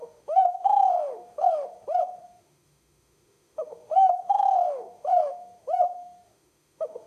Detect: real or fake fake